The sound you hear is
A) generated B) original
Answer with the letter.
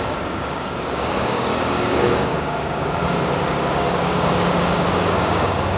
A